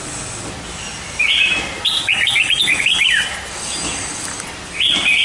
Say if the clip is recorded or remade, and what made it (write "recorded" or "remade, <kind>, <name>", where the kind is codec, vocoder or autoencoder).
recorded